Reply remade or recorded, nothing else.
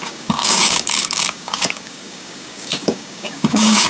remade